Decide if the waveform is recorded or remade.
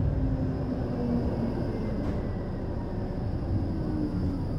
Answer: recorded